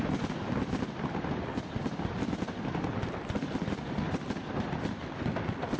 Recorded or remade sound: recorded